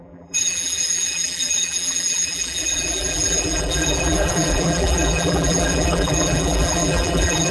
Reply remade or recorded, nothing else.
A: remade